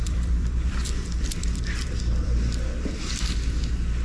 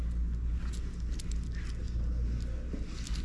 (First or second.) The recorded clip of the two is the second